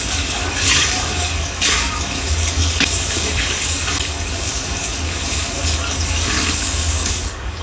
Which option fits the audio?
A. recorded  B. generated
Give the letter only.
B